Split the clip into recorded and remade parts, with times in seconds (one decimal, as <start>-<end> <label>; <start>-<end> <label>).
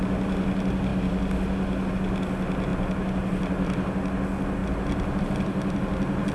0.0-6.3 recorded